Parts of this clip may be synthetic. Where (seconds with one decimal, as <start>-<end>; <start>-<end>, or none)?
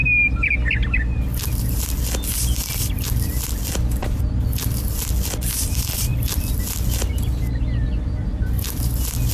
6.1-6.6